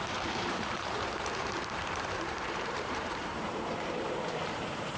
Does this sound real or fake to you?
fake